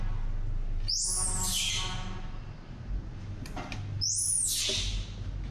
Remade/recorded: recorded